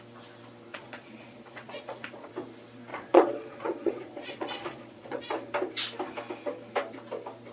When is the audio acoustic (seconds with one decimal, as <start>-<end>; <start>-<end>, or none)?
0.0-0.7; 2.3-2.9; 5.2-7.5